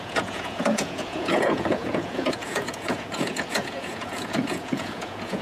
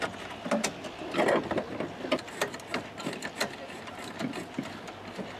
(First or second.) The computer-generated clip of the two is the first